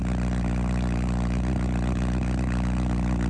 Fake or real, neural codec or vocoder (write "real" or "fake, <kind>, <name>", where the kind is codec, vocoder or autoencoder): real